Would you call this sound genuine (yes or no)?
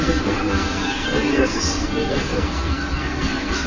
no